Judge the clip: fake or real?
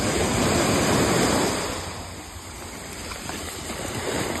real